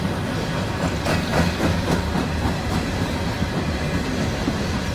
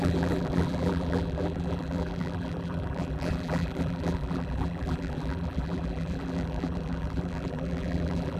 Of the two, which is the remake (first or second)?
second